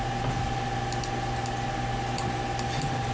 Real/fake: real